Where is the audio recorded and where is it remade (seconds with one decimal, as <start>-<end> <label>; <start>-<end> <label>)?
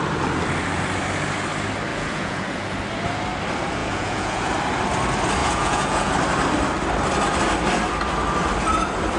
0.0-1.9 recorded; 1.9-2.8 remade; 2.8-3.8 recorded; 3.8-4.5 remade; 4.5-5.4 recorded; 5.4-6.1 remade; 6.1-9.2 recorded